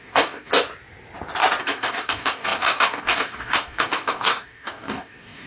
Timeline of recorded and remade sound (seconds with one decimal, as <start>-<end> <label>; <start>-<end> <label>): 0.0-0.5 remade; 0.5-1.6 recorded; 1.6-5.5 remade